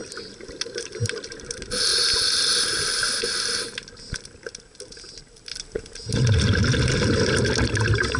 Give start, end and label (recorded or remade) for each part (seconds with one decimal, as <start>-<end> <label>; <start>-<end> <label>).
0.0-8.2 recorded

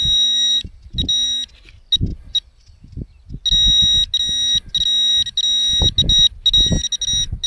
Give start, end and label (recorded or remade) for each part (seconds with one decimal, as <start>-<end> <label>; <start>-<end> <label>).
0.0-7.5 recorded

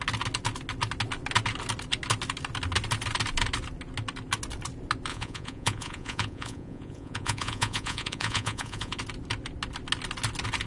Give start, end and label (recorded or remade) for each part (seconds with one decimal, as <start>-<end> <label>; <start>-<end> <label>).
0.0-5.1 recorded; 5.1-9.0 remade; 9.0-10.7 recorded

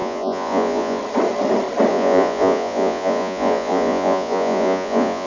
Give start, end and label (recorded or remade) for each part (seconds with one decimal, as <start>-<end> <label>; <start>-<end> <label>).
0.0-1.0 remade; 1.0-1.9 recorded; 1.9-5.3 remade

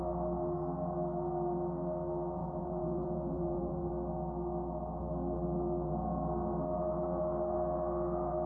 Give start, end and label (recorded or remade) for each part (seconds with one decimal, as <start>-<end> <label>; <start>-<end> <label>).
0.0-2.4 recorded; 2.4-3.9 remade; 3.9-8.5 recorded

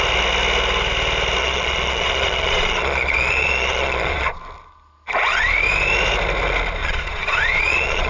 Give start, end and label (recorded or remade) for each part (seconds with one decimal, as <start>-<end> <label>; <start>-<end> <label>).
0.0-1.4 recorded; 1.4-4.4 remade; 4.4-6.8 recorded; 6.8-8.1 remade

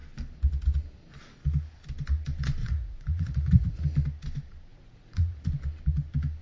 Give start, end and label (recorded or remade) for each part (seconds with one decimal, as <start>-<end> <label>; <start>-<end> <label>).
0.0-2.6 recorded; 2.6-3.8 remade; 3.8-4.7 recorded; 4.7-5.5 remade; 5.5-6.4 recorded